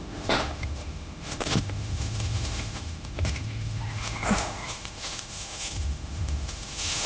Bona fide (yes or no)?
no